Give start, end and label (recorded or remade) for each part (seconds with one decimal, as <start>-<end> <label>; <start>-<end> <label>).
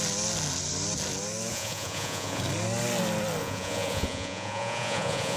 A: 0.0-1.5 recorded; 1.5-2.4 remade; 2.4-3.4 recorded; 3.4-5.4 remade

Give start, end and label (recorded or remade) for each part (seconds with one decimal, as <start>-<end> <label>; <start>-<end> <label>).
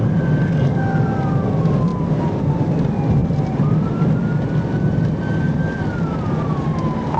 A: 0.0-7.2 recorded